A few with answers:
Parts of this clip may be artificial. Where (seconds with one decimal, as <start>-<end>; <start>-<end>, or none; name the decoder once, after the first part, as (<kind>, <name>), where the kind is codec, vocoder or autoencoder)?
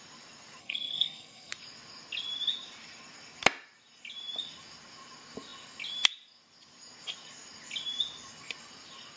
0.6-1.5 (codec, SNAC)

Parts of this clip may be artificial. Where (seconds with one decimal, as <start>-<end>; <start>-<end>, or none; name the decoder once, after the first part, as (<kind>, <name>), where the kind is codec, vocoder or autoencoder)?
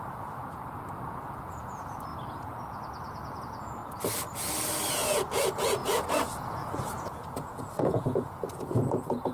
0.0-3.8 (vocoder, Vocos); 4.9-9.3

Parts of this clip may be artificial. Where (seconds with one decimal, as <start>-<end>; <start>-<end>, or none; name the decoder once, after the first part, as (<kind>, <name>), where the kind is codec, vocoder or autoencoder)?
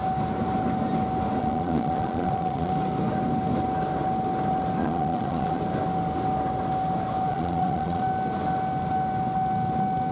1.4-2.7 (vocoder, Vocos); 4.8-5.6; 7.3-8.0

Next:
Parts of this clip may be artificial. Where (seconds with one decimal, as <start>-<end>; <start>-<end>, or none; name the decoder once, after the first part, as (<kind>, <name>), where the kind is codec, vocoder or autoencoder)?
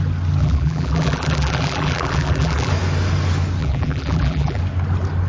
0.4-2.7 (vocoder, BigVGAN v2); 3.6-4.6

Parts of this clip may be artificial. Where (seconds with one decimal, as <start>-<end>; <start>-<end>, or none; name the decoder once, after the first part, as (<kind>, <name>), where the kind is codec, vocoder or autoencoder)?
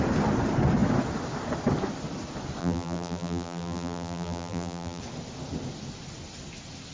2.6-5.0 (vocoder, BigVGAN v2)